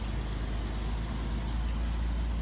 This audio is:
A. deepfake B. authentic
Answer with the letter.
B